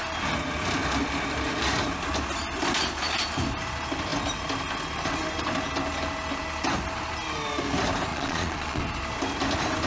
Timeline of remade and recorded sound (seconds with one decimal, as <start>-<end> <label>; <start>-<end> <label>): 0.0-8.1 recorded; 8.1-8.8 remade; 8.8-9.9 recorded